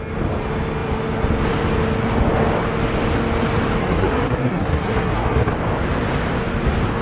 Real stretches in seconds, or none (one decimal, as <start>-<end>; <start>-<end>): 0.0-3.8; 5.5-7.0